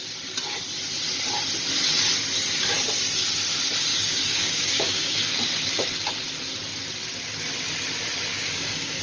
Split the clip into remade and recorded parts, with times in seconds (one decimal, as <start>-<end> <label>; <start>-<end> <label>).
0.0-3.9 recorded; 3.9-5.4 remade; 5.4-8.3 recorded; 8.3-9.0 remade